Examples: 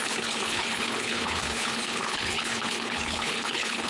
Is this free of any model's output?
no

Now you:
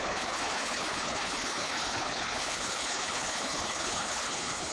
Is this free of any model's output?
no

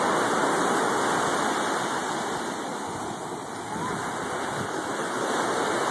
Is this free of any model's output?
yes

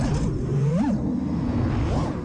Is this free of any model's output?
yes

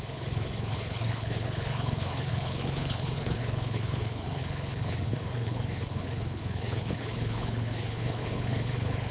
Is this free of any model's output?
no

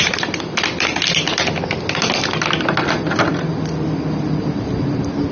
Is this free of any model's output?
yes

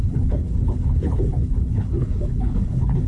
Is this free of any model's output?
no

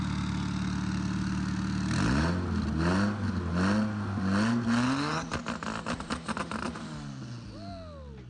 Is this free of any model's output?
yes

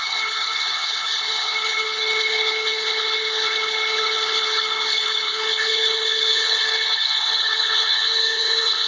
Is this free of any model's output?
no